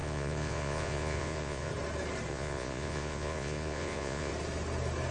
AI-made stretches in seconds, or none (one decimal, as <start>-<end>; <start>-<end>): 0.0-1.7; 2.3-4.3